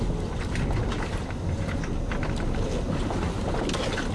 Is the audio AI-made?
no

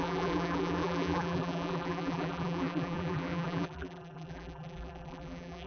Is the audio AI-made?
yes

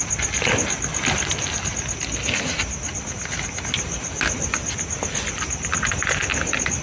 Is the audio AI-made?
no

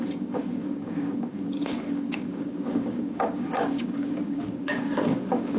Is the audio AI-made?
yes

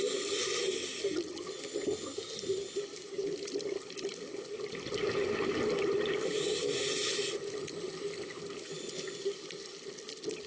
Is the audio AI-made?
no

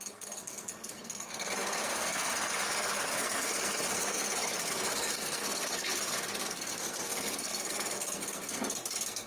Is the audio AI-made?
yes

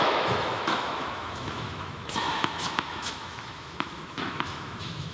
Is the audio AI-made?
yes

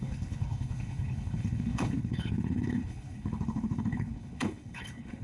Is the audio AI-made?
yes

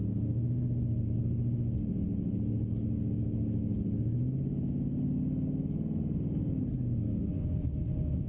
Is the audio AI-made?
no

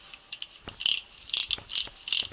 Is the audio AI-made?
no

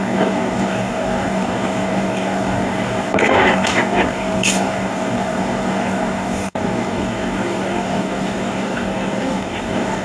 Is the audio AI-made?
yes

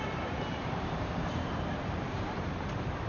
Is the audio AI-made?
yes